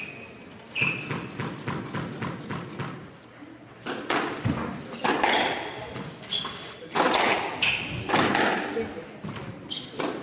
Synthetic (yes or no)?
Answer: no